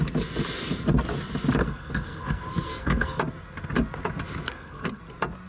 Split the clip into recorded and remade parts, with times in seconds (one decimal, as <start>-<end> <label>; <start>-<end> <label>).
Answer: 0.0-1.6 recorded; 1.6-3.2 remade; 3.2-4.5 recorded; 4.5-5.0 remade; 5.0-5.5 recorded